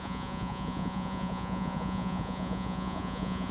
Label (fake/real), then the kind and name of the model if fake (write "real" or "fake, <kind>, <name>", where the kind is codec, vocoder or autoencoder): fake, vocoder, Vocos